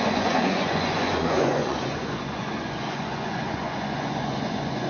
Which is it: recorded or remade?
remade